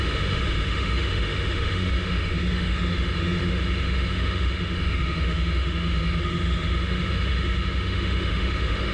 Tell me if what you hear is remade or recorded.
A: remade